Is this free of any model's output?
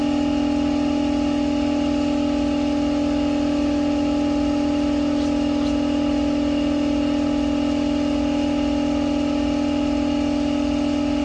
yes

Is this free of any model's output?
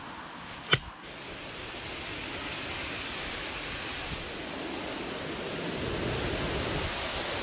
yes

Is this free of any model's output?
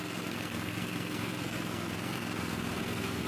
no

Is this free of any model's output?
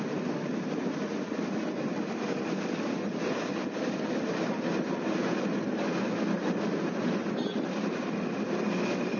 yes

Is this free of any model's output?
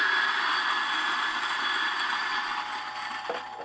no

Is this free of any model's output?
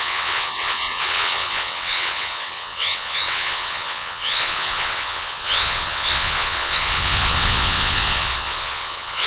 no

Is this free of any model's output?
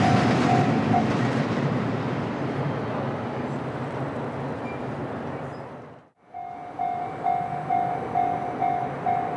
yes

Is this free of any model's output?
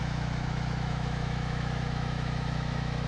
no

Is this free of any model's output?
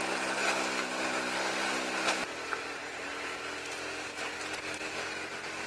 yes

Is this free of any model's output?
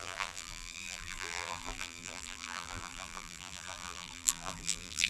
no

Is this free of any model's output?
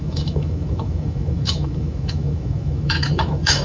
no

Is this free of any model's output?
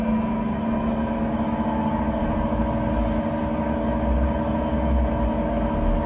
yes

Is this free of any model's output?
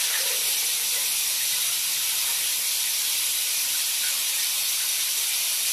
no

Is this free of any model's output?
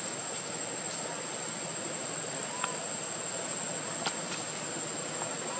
yes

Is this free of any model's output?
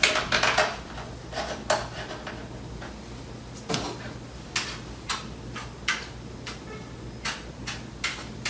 yes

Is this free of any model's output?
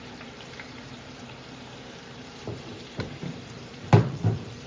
no